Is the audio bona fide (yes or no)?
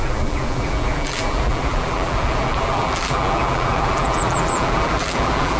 no